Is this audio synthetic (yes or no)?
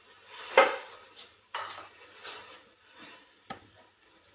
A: no